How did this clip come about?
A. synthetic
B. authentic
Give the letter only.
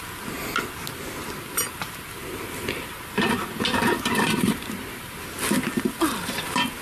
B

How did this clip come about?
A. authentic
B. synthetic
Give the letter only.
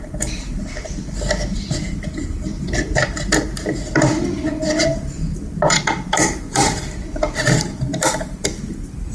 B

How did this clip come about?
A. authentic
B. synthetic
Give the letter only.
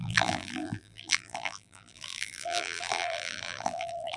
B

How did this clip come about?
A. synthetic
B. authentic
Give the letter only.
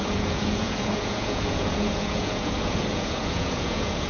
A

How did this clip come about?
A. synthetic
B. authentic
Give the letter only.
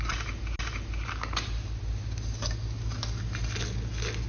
B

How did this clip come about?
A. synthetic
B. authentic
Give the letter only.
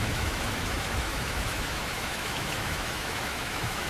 A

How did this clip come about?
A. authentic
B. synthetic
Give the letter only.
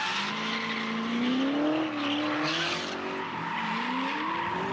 A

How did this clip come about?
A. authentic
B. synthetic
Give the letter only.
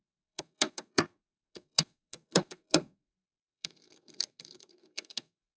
B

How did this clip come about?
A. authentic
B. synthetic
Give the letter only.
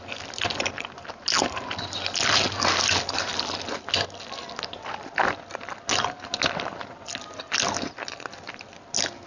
A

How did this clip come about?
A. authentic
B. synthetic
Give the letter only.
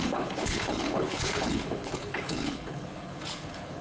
B